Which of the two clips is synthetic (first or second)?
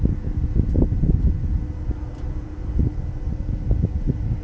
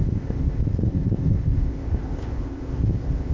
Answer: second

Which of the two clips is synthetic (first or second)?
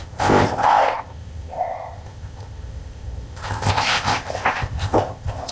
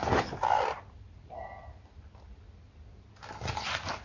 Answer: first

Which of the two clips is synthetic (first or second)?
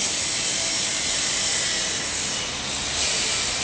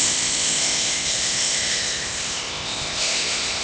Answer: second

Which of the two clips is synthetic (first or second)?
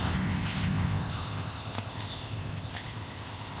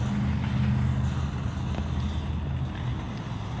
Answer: first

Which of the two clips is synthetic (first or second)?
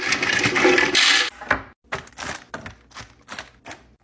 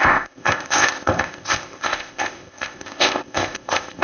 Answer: second